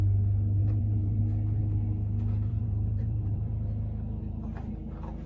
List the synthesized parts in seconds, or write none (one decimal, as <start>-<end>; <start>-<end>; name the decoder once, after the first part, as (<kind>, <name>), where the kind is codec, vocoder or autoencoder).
0.6-1.2 (vocoder, BigVGAN v2); 2.5-3.8; 4.2-4.7